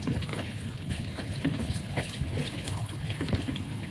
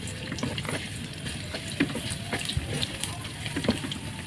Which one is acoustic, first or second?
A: second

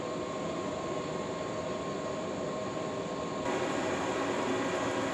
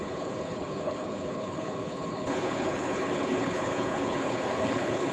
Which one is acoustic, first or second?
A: first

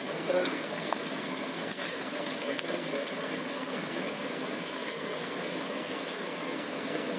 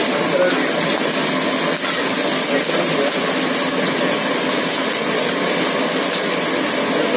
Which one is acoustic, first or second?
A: second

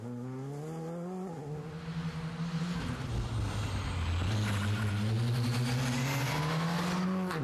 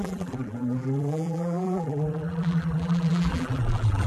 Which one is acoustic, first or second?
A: first